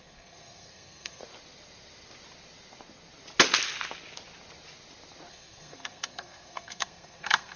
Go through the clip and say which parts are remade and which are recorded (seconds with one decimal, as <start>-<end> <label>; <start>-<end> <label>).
0.0-1.2 remade; 1.2-5.3 recorded; 5.3-7.6 remade

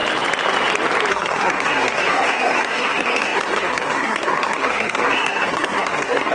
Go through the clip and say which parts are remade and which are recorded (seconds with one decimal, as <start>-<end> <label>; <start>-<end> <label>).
0.0-1.1 recorded; 1.1-6.3 remade

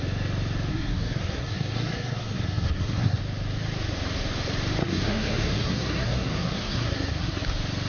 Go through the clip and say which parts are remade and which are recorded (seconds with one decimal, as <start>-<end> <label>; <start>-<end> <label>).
0.0-0.7 recorded; 0.7-3.2 remade; 3.2-4.8 recorded; 4.8-7.4 remade; 7.4-7.9 recorded